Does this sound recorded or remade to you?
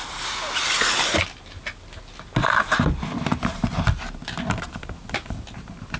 recorded